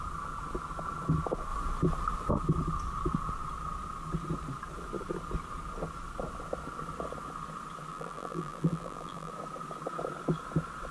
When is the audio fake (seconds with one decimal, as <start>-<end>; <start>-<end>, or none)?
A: 7.9-9.3